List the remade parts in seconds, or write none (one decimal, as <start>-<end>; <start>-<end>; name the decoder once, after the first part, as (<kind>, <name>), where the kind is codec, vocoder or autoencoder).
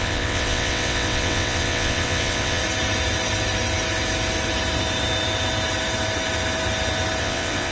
0.0-2.6 (vocoder, WaveNeXt); 7.2-7.7